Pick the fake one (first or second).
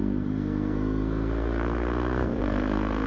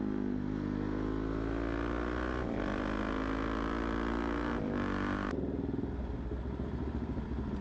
first